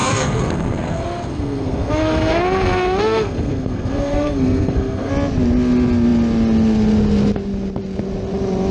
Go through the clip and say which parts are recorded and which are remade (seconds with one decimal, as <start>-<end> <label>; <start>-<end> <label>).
0.0-5.1 remade; 5.1-8.7 recorded